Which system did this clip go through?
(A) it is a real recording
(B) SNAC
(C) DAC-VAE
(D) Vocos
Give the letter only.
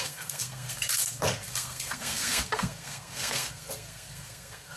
B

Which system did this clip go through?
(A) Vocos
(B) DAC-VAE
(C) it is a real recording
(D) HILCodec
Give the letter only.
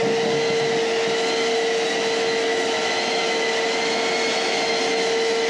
C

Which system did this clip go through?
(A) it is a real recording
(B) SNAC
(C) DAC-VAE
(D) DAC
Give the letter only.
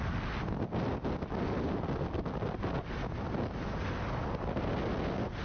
A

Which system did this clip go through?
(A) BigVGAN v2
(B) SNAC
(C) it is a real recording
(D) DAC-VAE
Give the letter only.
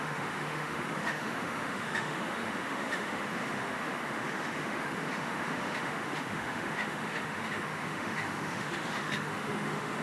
D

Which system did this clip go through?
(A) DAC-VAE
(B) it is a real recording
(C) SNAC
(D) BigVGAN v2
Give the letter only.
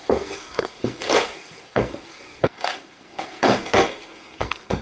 C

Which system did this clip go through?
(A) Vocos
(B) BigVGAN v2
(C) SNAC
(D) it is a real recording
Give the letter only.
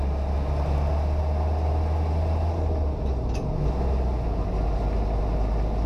D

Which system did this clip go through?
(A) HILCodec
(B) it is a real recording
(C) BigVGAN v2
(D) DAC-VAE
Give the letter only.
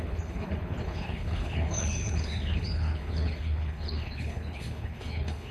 A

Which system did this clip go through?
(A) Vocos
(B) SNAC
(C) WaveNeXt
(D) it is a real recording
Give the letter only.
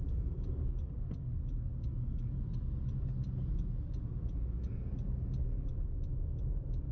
D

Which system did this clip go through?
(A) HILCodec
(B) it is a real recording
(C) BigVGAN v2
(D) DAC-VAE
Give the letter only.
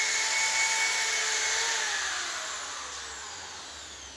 B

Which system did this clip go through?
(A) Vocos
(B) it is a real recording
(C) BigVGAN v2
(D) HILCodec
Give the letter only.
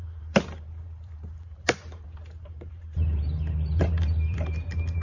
C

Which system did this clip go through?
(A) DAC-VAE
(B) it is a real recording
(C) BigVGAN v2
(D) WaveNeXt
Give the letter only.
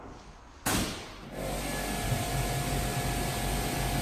B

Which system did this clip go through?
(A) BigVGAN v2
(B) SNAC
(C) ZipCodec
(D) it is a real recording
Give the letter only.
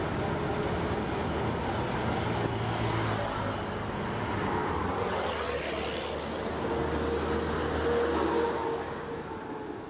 D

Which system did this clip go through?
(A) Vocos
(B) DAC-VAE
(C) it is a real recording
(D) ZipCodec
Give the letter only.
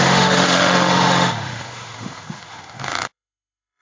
B